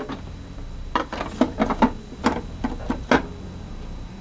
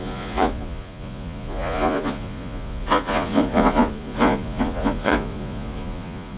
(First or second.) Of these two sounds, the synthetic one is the second